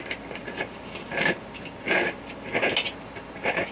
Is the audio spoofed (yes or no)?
no